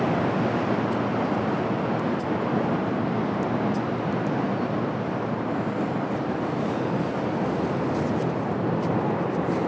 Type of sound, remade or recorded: recorded